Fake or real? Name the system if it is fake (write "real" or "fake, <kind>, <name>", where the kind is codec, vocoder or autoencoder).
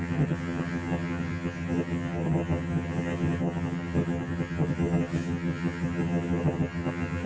fake, vocoder, HiFi-GAN